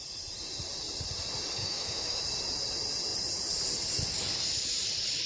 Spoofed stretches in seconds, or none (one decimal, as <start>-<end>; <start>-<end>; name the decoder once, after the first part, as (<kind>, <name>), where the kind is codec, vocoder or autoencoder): 1.6-2.2 (autoencoder, DAC-VAE)